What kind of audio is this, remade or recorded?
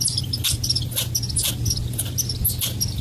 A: recorded